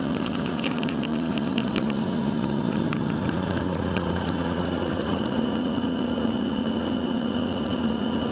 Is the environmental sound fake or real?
fake